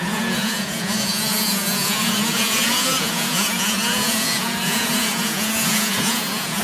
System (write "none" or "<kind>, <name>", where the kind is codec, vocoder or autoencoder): vocoder, Vocos